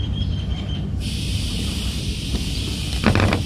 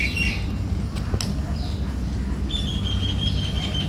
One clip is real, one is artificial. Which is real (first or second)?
second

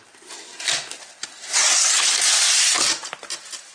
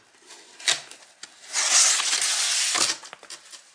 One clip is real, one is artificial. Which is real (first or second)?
second